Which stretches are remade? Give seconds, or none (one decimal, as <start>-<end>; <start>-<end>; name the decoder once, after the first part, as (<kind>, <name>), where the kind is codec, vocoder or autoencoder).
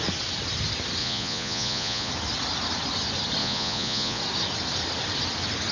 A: 1.0-2.1 (vocoder, Vocos); 3.4-4.2